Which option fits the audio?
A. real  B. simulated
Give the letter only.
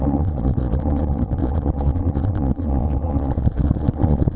B